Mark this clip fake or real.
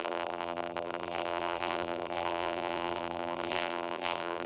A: fake